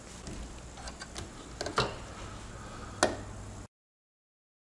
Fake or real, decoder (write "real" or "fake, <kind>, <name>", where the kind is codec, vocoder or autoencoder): real